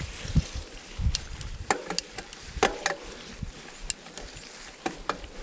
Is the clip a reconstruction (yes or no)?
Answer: no